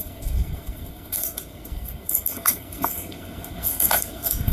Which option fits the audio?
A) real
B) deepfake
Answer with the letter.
B